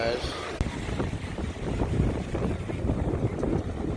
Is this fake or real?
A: real